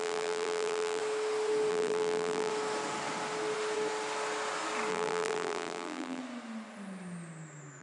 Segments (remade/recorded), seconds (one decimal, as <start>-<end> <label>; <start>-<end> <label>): 0.0-1.0 remade; 1.0-1.7 recorded; 1.7-2.5 remade; 2.5-4.9 recorded; 4.9-6.2 remade; 6.2-7.8 recorded